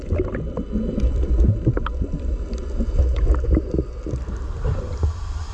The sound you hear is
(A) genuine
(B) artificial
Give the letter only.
A